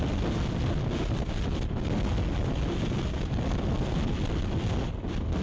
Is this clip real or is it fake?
real